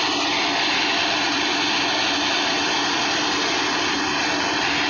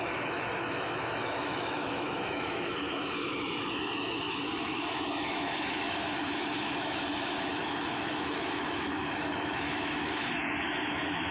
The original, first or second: first